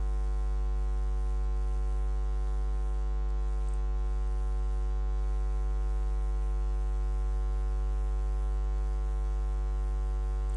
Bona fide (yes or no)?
yes